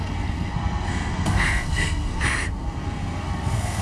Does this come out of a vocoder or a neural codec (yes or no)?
yes